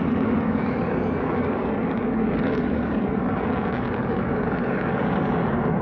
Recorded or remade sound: remade